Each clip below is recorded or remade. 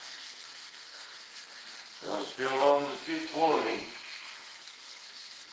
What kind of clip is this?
remade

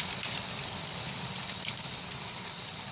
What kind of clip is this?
recorded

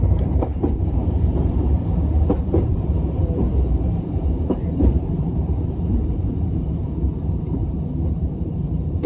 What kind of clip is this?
remade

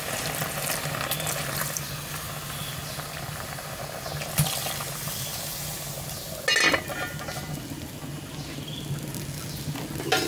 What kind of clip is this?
recorded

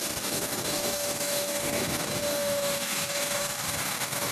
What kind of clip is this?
remade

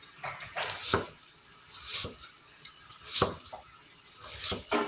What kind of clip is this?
recorded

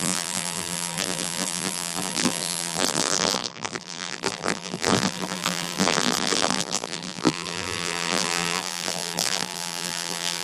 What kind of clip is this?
remade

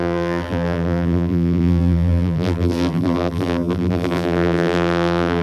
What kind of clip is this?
remade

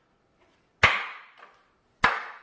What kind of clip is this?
recorded